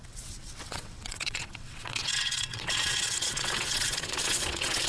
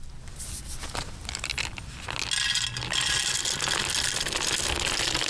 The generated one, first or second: first